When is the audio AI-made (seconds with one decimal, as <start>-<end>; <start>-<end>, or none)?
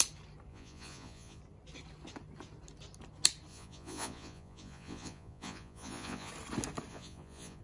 0.5-1.4; 3.5-6.3; 6.9-7.6